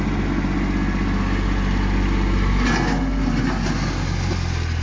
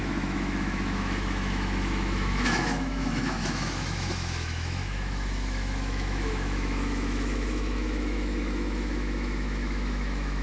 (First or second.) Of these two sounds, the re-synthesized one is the second